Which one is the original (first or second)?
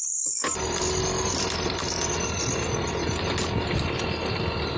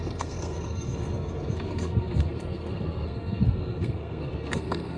first